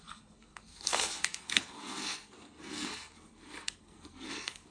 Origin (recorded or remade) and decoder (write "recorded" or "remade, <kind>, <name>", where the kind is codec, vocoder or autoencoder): remade, codec, SNAC